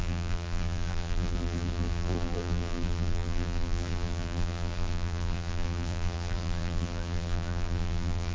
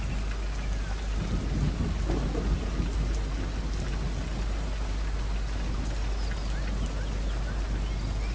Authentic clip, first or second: second